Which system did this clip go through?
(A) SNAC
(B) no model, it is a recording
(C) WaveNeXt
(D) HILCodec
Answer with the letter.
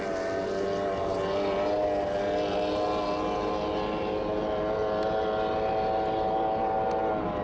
B